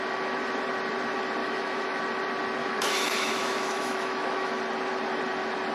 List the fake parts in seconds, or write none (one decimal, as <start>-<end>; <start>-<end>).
1.4-2.0; 2.6-4.6